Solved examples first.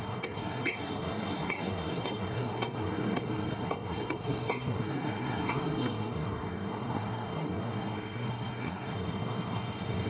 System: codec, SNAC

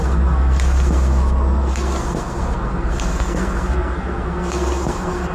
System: codec, SNAC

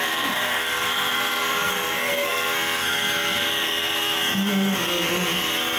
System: codec, SNAC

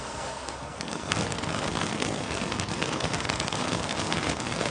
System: codec, SNAC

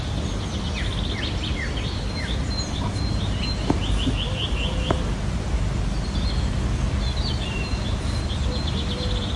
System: none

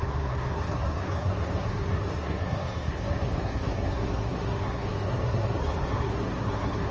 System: codec, SNAC